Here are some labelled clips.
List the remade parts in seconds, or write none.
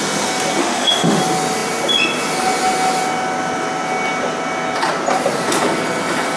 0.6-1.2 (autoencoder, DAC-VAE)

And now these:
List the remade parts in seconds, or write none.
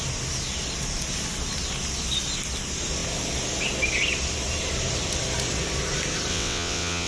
6.3-7.1 (vocoder, WaveNeXt)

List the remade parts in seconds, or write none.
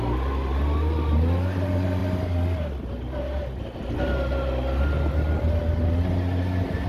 none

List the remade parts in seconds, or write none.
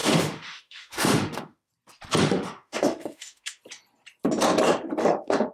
0.0-1.7 (autoencoder, DAC-VAE); 2.2-3.6; 5.0-5.5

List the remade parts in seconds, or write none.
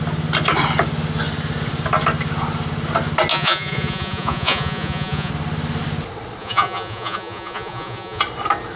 3.3-5.3 (vocoder, Vocos); 6.4-8.2